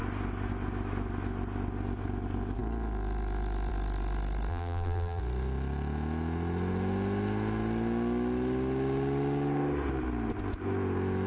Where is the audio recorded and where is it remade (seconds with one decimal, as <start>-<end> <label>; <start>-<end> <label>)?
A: 0.0-4.5 recorded; 4.5-5.2 remade; 5.2-11.3 recorded